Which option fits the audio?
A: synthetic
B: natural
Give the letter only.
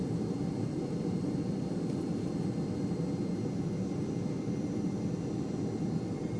B